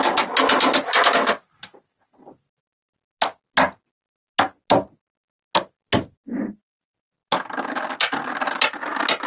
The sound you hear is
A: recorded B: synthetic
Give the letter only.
A